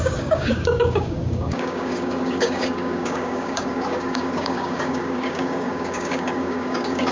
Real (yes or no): no